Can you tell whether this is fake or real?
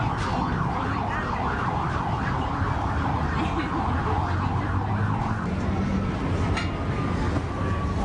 real